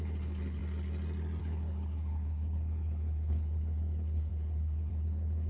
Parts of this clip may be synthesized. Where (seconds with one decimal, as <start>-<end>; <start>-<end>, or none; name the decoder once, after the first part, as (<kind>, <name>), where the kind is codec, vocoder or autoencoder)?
0.0-0.6 (codec, HILCodec); 1.4-5.5